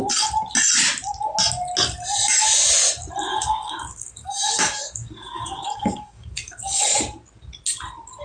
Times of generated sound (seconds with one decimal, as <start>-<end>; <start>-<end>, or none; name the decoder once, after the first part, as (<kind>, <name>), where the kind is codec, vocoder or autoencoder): 3.3-7.0 (codec, DAC)